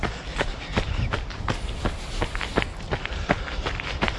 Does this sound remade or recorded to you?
remade